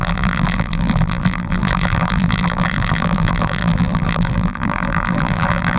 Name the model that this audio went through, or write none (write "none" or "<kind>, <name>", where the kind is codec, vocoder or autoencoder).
vocoder, BigVGAN v2